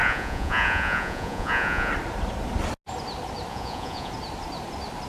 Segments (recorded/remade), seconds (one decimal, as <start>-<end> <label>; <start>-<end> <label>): 0.0-1.9 remade; 1.9-3.5 recorded; 3.5-4.1 remade; 4.1-5.1 recorded